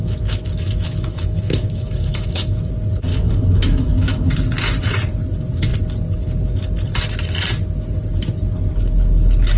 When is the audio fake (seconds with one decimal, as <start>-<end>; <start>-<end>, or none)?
0.0-2.7; 3.1-4.3